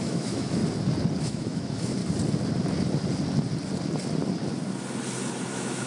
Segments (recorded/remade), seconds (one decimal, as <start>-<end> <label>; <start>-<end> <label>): 0.0-0.6 remade; 0.6-1.2 recorded; 1.2-2.0 remade; 2.0-5.5 recorded; 5.5-5.9 remade